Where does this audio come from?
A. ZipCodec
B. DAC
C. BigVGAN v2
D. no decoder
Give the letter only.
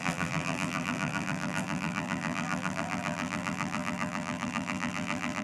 C